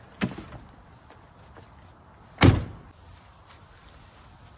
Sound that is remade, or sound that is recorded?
recorded